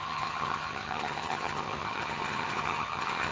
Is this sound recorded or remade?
remade